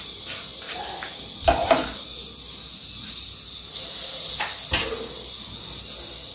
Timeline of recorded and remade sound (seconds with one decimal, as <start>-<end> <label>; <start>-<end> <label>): 0.0-6.3 recorded